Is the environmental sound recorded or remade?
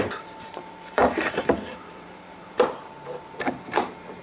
remade